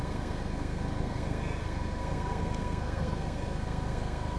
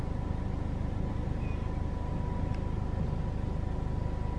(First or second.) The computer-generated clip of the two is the first